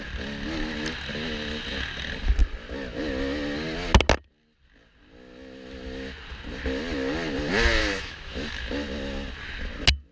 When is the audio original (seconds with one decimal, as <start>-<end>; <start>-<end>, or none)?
0.0-7.8; 8.7-10.1